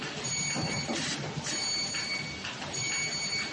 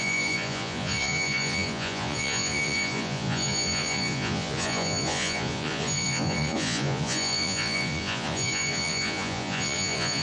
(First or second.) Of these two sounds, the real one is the first